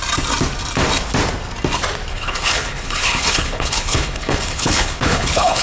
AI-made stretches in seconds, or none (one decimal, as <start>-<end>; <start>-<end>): 2.1-5.6